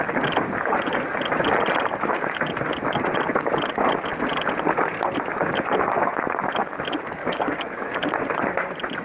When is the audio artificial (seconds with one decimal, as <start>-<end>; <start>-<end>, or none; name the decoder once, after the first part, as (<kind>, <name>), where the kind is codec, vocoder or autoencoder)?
7.2-8.1 (codec, DAC)